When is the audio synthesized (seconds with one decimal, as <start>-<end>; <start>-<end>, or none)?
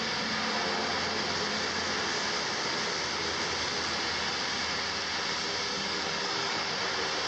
5.7-6.7